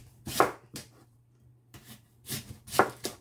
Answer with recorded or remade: remade